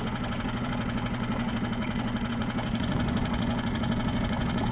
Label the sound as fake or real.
fake